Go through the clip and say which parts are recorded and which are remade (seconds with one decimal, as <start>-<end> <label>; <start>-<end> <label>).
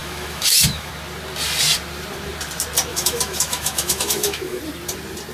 0.0-0.9 remade; 0.9-2.9 recorded; 2.9-4.6 remade; 4.6-5.3 recorded